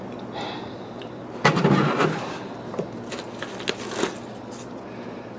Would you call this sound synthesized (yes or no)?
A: no